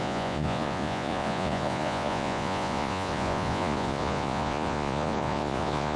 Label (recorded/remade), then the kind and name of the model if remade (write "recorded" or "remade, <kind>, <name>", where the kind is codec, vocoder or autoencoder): remade, vocoder, Vocos